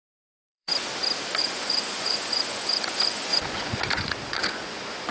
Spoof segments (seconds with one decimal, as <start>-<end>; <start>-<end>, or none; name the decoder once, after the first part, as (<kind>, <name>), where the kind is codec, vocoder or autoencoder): 0.0-0.7 (vocoder, Vocos); 1.4-5.1